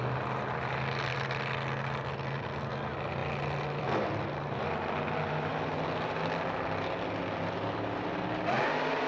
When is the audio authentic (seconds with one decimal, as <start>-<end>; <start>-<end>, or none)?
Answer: 0.0-9.1